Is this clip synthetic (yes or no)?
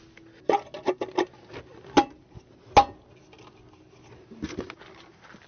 no